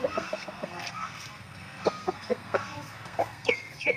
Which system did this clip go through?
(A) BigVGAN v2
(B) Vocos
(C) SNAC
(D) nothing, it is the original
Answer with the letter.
C